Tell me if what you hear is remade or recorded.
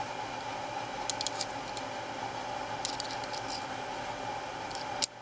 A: recorded